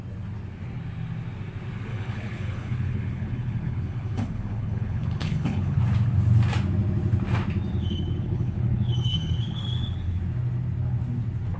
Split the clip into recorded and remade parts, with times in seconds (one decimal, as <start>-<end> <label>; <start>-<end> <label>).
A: 0.0-1.9 recorded; 1.9-5.8 remade; 5.8-7.7 recorded; 7.7-10.2 remade; 10.2-11.6 recorded